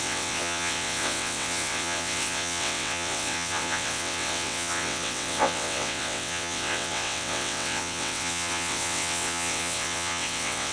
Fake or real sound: fake